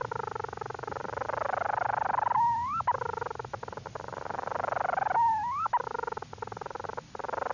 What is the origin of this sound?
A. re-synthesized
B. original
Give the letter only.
B